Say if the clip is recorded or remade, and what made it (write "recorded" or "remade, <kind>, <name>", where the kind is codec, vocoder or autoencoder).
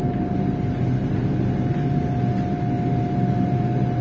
recorded